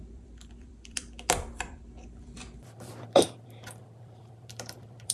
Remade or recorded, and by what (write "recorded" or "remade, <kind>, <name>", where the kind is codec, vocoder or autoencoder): remade, vocoder, BigVGAN v2